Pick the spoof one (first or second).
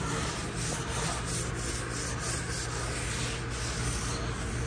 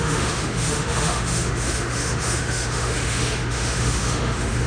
second